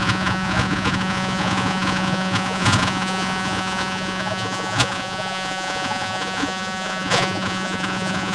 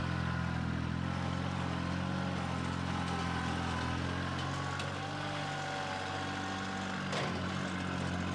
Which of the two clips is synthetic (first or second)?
first